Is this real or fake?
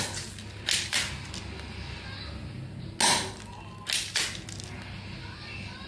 real